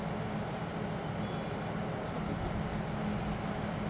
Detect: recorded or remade recorded